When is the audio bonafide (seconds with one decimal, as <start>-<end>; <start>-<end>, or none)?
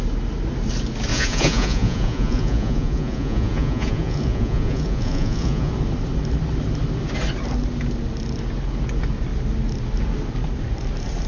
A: 0.0-1.1; 5.7-11.3